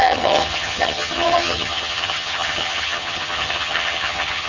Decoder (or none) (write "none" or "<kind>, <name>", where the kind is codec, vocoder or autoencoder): vocoder, HiFi-GAN